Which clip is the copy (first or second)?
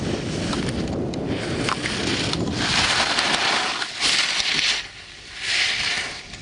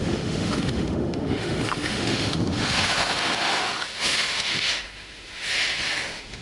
second